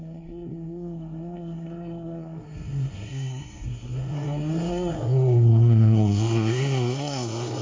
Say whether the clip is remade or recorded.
remade